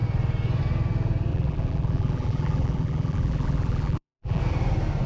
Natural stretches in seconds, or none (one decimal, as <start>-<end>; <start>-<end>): 0.0-1.3; 4.4-5.1